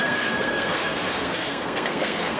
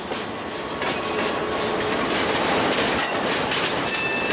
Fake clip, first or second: first